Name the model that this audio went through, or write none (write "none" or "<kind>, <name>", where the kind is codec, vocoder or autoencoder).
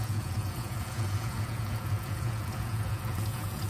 vocoder, Vocos